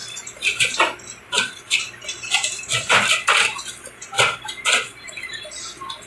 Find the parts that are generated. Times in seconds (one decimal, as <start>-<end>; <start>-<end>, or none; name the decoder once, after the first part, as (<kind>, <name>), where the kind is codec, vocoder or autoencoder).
4.9-5.6 (vocoder, BigVGAN v2)